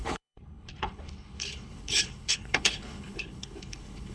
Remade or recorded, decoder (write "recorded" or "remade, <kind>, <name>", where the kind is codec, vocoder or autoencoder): remade, codec, HILCodec